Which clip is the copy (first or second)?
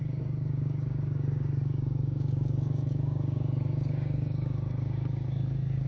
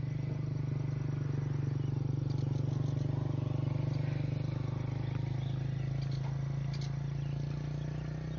first